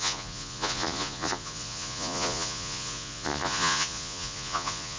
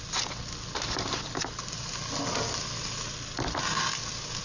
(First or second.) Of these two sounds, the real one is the second